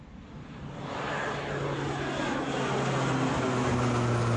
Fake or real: real